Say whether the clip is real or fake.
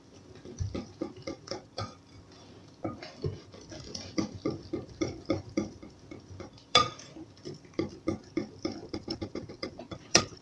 fake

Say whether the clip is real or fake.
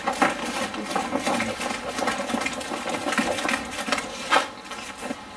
real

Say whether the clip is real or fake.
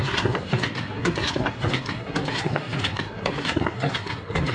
fake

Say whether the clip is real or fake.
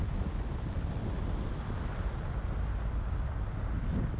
real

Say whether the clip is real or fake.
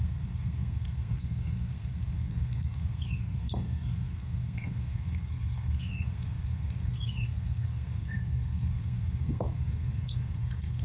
fake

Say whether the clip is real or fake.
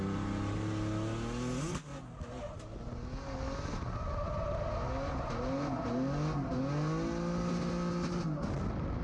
real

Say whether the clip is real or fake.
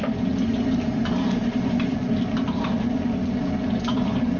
real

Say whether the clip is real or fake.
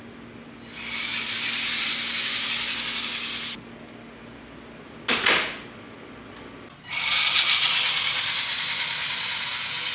real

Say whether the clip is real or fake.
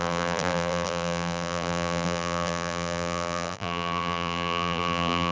fake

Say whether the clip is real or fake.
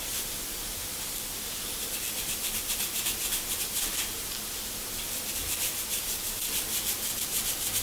real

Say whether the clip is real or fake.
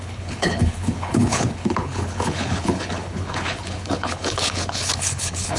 fake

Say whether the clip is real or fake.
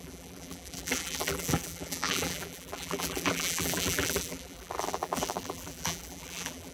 fake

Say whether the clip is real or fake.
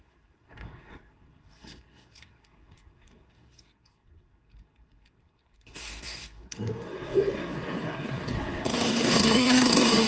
fake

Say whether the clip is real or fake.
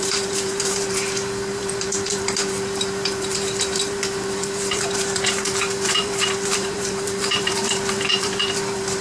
fake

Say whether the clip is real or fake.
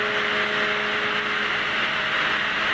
real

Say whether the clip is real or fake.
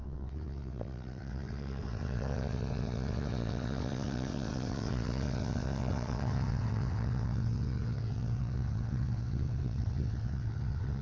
fake